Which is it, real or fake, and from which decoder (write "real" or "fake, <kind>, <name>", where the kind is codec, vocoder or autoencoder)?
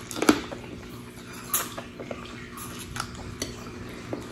real